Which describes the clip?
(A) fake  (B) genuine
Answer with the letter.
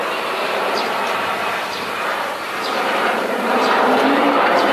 A